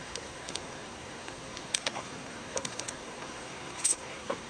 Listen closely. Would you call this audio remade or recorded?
remade